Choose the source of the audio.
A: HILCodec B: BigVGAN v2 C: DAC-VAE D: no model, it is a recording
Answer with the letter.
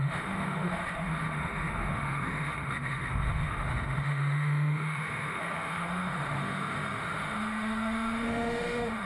C